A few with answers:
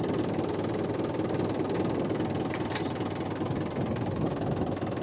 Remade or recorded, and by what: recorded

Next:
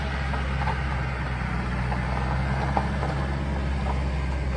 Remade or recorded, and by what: recorded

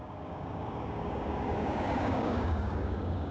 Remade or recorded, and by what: remade, codec, DAC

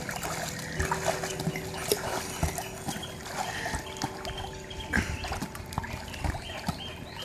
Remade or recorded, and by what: recorded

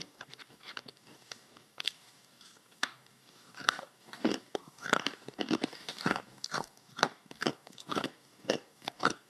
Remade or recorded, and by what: remade, codec, DAC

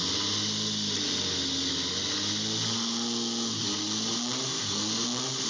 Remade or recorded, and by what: recorded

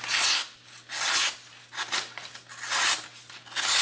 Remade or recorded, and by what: recorded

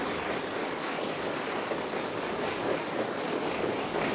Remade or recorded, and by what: remade, codec, DAC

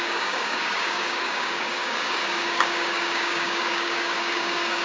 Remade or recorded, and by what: remade, codec, DAC